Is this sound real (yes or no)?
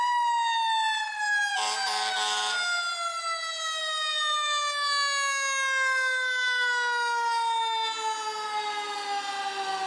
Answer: yes